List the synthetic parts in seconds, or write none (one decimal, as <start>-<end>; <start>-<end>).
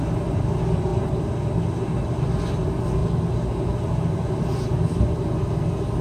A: none